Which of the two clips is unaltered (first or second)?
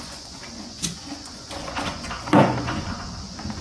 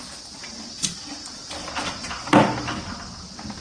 second